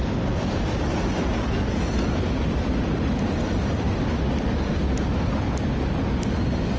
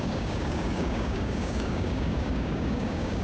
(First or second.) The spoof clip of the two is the second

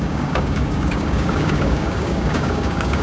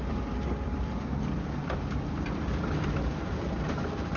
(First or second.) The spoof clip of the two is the first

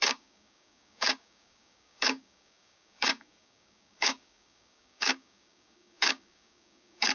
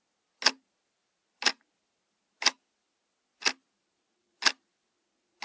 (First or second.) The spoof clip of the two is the first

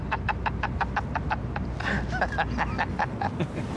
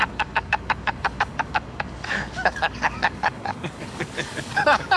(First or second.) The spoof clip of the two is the second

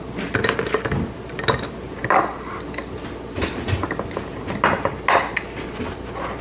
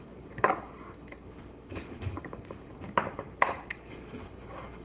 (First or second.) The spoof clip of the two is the second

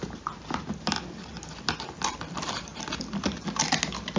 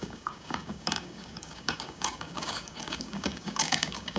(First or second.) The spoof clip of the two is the second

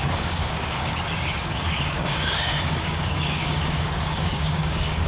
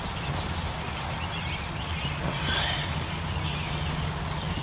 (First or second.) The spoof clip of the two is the first